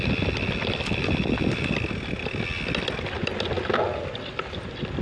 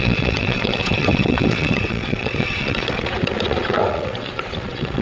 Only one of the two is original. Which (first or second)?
first